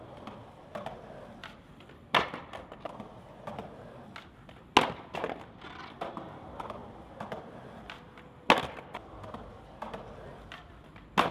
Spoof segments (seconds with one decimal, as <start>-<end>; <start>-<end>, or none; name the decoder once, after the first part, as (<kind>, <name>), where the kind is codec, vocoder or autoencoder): 1.4-3.4 (vocoder, BigVGAN v2)